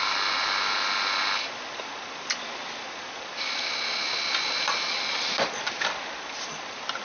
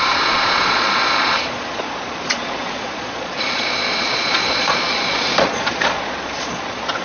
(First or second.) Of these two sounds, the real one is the first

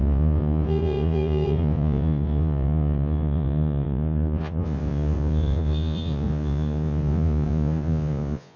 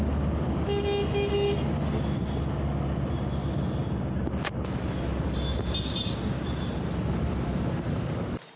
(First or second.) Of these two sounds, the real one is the second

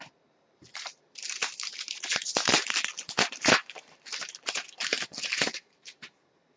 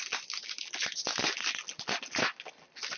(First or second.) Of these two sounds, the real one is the second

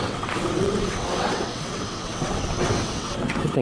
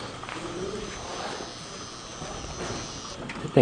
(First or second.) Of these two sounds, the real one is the second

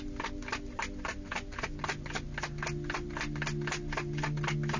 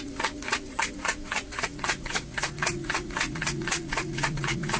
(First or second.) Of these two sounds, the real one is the first